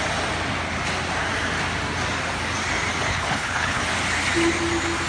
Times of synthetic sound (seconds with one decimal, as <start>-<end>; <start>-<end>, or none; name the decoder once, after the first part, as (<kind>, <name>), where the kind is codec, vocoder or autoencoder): 3.1-3.8 (codec, HILCodec)